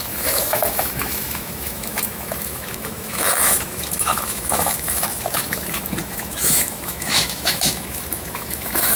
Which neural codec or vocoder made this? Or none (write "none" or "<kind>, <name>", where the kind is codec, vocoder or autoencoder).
autoencoder, DAC-VAE